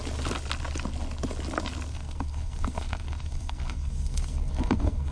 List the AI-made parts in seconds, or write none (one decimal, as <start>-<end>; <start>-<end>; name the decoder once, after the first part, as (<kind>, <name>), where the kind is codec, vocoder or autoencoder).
1.9-5.1 (codec, SNAC)